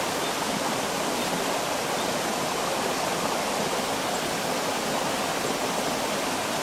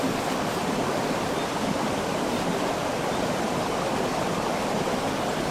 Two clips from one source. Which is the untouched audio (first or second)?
first